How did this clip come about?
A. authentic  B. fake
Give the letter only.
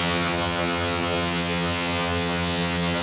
B